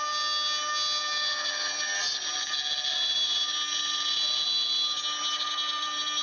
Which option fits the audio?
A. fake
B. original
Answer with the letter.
B